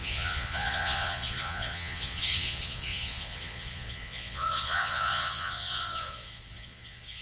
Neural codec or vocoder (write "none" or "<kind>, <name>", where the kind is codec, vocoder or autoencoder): vocoder, Vocos